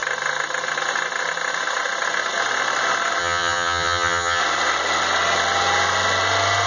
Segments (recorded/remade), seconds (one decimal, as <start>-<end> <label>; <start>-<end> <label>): 0.0-3.2 recorded; 3.2-4.4 remade; 4.4-6.7 recorded